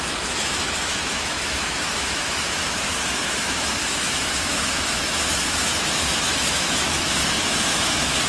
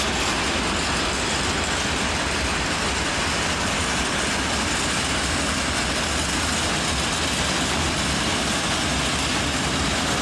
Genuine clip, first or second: second